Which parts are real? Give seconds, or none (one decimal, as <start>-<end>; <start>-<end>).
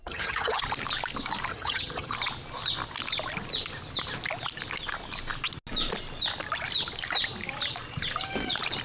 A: 0.6-1.5; 2.1-8.8